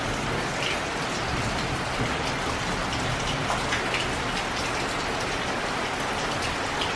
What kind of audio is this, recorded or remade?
recorded